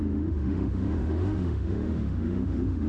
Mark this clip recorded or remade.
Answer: remade